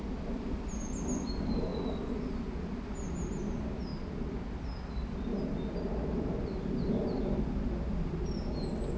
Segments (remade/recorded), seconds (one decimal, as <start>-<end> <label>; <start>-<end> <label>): 0.0-9.0 recorded